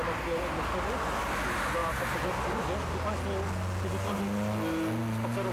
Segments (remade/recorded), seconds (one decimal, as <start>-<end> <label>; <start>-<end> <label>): 0.0-1.8 recorded; 1.8-2.7 remade; 2.7-5.5 recorded

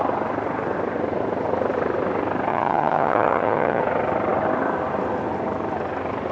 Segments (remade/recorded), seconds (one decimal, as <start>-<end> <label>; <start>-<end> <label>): 0.0-2.5 recorded; 2.5-3.8 remade; 3.8-6.3 recorded